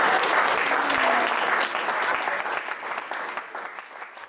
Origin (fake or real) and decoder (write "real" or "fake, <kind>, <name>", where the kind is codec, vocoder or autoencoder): real